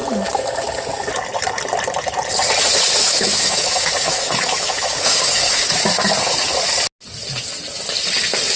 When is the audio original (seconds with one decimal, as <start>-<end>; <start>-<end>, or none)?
0.0-3.0; 6.1-8.6